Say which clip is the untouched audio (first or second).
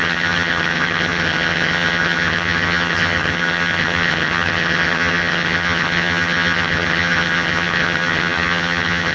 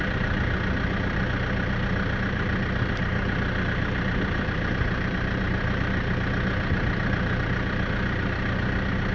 second